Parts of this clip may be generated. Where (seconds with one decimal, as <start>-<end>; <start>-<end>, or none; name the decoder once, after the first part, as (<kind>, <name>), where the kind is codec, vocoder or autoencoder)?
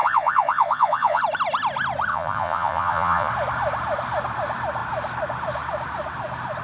0.0-1.2 (vocoder, Vocos); 2.1-3.3